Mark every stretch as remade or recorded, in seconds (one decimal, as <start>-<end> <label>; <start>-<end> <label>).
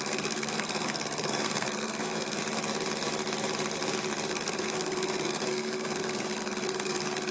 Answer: 0.0-2.4 remade; 2.4-4.3 recorded; 4.3-7.3 remade